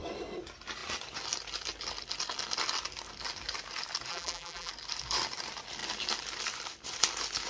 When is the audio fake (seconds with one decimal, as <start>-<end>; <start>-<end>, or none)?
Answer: 4.1-4.7